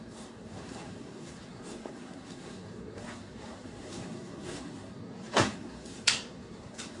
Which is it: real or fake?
fake